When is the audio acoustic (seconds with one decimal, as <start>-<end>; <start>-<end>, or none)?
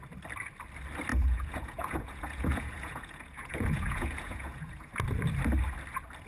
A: 0.0-1.1; 4.9-6.3